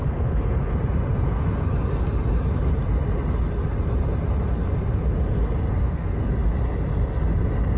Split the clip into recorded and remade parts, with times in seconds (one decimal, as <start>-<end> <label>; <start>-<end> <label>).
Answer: 0.0-0.7 remade; 0.7-5.8 recorded; 5.8-6.3 remade; 6.3-7.8 recorded